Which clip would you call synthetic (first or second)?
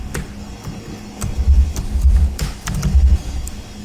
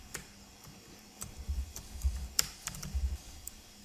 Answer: second